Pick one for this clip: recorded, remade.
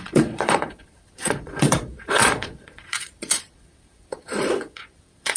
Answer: remade